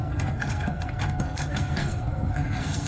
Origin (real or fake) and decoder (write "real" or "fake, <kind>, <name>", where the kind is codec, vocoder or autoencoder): fake, codec, SNAC